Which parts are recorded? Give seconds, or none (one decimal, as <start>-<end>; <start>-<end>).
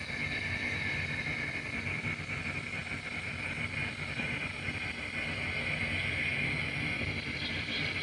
0.0-8.0